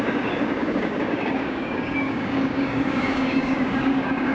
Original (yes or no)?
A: no